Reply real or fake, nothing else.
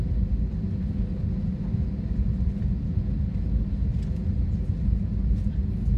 real